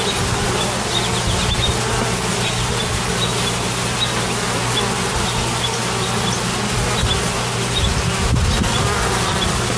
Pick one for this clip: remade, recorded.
recorded